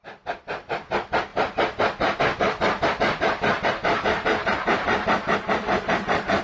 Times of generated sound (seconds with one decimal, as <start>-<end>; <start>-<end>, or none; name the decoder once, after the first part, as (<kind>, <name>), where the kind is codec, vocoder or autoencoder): 3.9-6.4 (vocoder, BigVGAN v2)